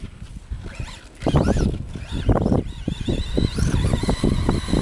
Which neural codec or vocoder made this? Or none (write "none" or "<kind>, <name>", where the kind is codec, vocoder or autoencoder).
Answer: none